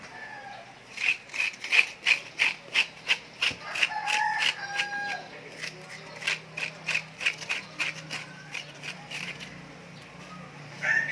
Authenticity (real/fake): real